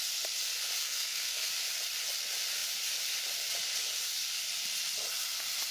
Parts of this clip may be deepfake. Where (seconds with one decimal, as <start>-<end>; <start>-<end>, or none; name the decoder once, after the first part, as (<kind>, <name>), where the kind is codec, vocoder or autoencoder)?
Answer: 0.8-1.5 (codec, SNAC)